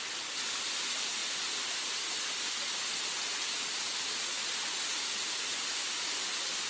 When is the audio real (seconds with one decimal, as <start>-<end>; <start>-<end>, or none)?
0.0-6.7